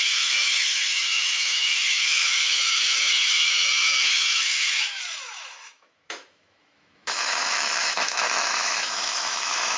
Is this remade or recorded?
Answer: remade